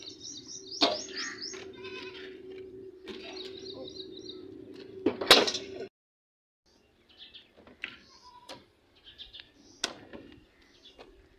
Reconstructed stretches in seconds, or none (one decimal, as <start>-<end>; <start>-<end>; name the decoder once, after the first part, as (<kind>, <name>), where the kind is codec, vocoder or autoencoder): 8.2-8.8 (vocoder, BigVGAN v2)